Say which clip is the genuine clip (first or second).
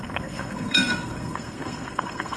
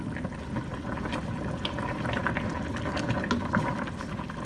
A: second